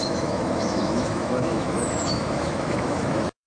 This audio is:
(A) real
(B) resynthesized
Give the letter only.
B